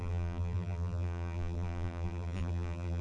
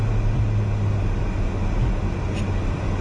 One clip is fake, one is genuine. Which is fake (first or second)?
first